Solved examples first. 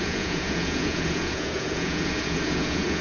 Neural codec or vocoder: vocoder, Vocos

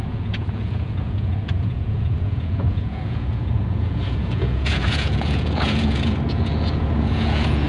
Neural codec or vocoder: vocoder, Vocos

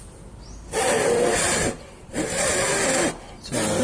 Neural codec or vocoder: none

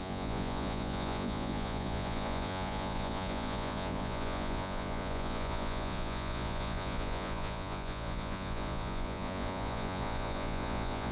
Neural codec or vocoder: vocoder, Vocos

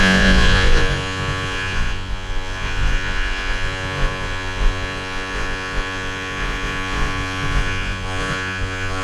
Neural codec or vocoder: vocoder, Vocos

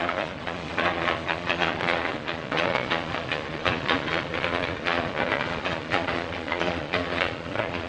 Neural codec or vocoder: vocoder, Vocos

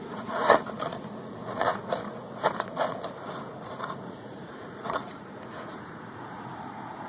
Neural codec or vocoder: vocoder, Vocos